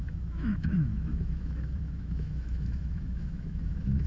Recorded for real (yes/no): no